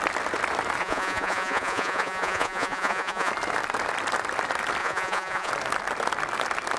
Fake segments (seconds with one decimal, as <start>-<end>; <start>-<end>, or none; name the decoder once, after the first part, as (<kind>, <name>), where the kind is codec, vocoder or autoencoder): 0.8-3.3 (vocoder, Vocos); 4.8-5.5